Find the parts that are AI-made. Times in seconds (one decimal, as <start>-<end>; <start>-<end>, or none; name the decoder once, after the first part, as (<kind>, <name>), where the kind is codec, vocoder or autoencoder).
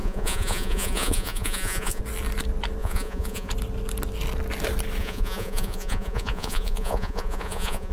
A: 0.0-2.0 (vocoder, Vocos); 2.8-3.5; 5.0-7.9